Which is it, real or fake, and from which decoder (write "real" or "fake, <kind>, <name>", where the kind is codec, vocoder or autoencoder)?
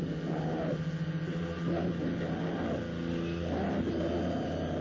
real